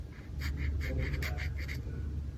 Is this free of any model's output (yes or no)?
yes